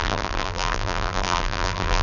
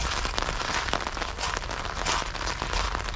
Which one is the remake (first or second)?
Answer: first